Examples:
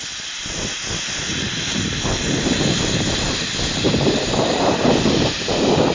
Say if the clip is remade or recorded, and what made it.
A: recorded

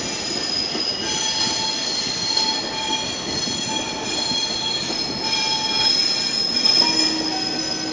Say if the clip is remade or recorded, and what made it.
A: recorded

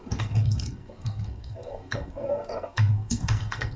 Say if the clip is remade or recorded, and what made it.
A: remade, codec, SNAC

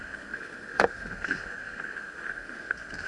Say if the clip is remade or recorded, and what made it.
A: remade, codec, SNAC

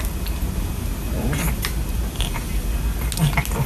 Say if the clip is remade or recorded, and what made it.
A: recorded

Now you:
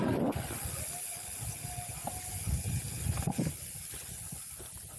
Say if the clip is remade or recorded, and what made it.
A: recorded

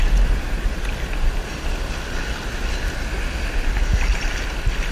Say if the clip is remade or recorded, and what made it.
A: recorded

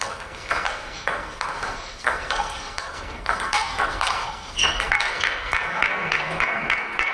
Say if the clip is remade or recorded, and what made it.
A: remade, codec, SNAC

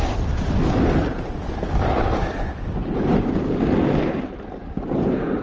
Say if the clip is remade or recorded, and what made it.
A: recorded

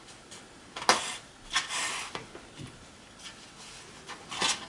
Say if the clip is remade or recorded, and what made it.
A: recorded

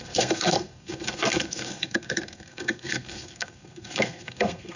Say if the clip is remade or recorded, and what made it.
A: remade, codec, SNAC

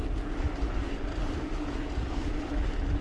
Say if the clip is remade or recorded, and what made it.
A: recorded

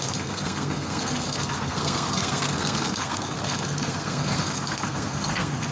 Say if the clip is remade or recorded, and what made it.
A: remade, codec, SNAC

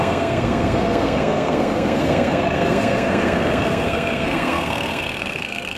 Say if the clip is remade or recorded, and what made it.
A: remade, codec, SNAC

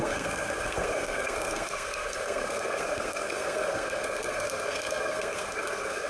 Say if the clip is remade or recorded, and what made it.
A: remade, codec, SNAC